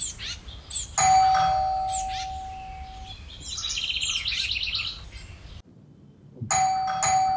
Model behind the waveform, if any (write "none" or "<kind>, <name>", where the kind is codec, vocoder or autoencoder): none